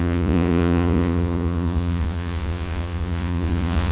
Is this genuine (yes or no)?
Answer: no